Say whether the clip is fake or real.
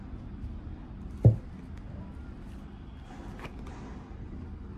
real